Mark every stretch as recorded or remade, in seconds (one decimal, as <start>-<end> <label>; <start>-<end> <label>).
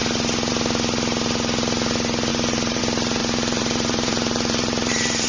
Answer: 0.0-2.3 recorded; 2.3-2.8 remade; 2.8-3.2 recorded; 3.2-5.3 remade